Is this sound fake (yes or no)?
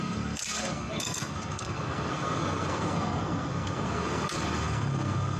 yes